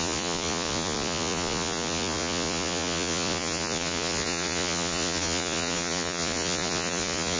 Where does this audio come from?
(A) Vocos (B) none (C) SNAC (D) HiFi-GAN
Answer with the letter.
A